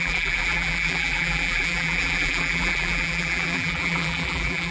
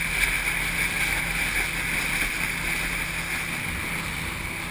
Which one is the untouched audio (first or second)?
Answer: second